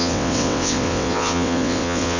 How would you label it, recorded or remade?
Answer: remade